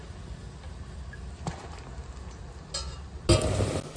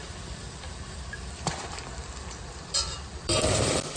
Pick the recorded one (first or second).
first